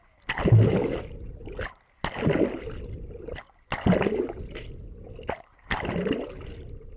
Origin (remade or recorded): recorded